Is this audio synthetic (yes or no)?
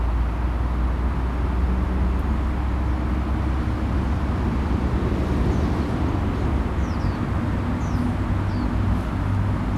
no